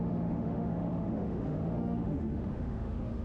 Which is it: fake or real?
fake